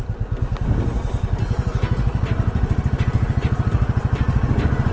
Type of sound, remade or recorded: recorded